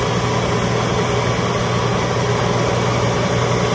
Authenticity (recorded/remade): recorded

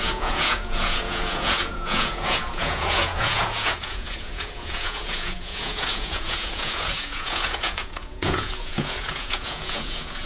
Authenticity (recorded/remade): remade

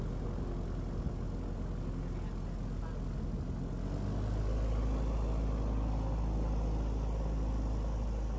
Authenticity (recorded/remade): recorded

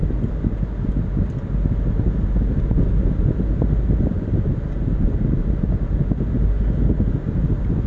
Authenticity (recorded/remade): recorded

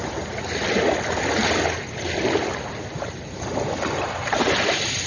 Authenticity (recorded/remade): recorded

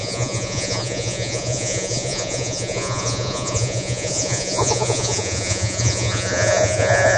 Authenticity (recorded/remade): remade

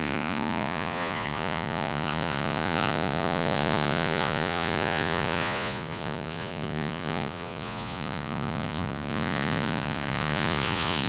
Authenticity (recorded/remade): remade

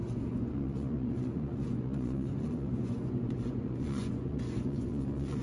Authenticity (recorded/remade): remade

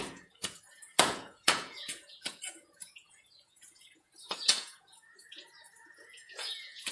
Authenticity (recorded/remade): remade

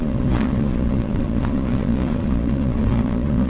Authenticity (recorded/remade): remade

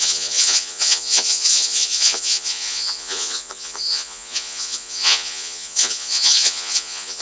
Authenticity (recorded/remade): remade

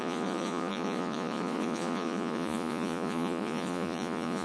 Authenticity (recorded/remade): remade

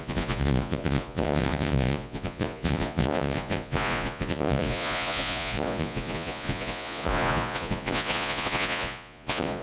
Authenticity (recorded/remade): remade